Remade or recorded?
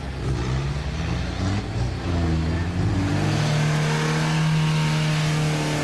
recorded